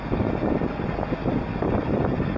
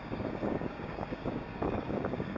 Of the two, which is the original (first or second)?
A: first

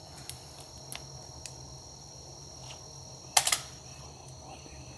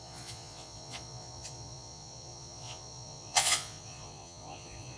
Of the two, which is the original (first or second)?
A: first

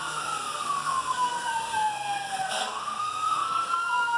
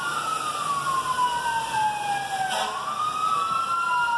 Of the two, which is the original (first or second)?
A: second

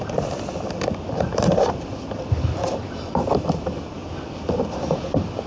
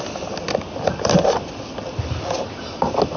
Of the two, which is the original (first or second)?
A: second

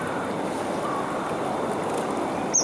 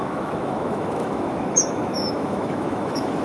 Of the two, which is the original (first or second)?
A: first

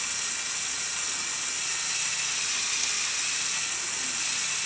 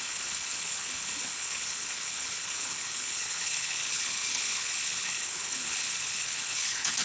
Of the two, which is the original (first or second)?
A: first